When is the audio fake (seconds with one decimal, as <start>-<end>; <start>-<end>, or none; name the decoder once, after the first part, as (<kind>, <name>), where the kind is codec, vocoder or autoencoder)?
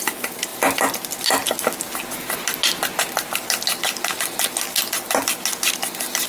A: none